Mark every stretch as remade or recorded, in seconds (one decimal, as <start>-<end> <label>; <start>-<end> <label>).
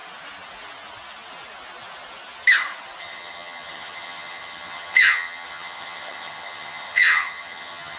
0.0-3.0 recorded; 3.0-8.0 remade